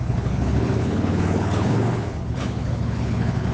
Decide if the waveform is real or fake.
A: fake